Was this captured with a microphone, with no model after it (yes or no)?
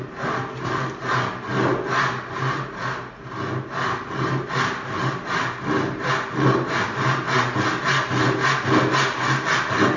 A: yes